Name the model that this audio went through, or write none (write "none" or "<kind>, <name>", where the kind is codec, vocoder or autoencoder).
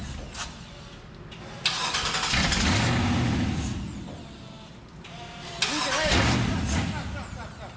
none